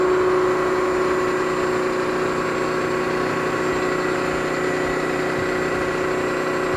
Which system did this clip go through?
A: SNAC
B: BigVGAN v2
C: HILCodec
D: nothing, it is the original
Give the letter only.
D